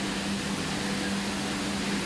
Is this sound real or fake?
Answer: real